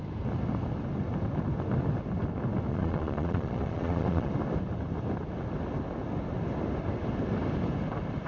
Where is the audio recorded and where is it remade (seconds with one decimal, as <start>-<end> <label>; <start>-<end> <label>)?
0.0-2.7 recorded; 2.7-4.3 remade; 4.3-8.3 recorded